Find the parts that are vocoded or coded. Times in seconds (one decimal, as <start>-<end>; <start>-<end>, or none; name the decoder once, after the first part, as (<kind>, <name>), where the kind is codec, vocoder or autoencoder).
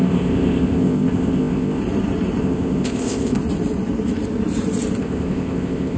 0.0-1.8 (codec, ZipCodec); 2.4-3.4; 5.0-6.0